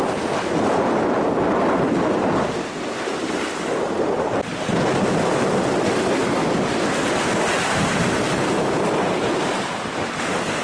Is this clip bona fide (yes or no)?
yes